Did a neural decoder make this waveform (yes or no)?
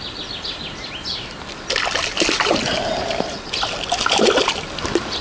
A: no